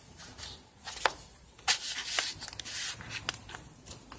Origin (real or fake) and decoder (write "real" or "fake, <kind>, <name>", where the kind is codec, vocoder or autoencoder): real